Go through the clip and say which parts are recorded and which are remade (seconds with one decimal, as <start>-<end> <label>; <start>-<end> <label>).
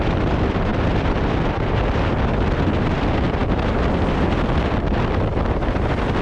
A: 0.0-6.2 recorded